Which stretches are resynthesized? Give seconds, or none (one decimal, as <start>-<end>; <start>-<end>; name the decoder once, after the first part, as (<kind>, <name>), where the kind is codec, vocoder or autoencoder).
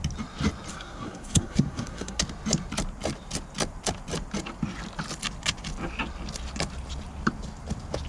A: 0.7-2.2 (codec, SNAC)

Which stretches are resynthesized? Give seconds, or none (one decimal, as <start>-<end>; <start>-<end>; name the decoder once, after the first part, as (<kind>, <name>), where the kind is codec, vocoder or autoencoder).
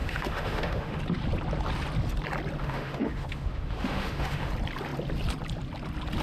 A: 0.0-1.0 (autoencoder, DAC-VAE); 2.6-4.5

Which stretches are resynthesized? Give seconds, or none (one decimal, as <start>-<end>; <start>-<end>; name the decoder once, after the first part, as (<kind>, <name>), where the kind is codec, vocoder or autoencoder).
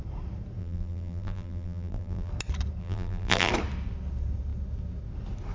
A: 0.6-2.3 (vocoder, BigVGAN v2); 2.8-3.5